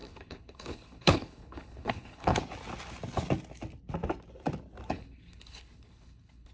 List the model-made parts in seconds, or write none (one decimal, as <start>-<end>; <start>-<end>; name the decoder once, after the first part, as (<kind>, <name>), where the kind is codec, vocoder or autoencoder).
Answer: 0.0-2.4 (codec, HILCodec); 4.9-6.5